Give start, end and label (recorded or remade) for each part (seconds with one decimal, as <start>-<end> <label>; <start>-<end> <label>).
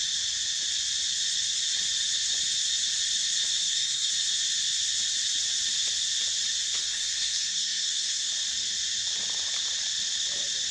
0.0-3.6 recorded; 3.6-4.1 remade; 4.1-6.8 recorded; 6.8-8.3 remade; 8.3-10.7 recorded